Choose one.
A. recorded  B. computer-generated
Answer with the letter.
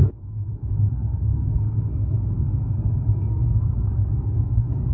B